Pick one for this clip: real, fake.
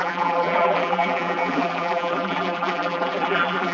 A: fake